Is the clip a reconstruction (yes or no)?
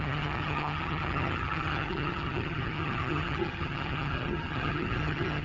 yes